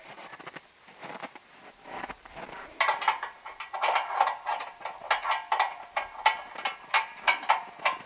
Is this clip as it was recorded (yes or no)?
yes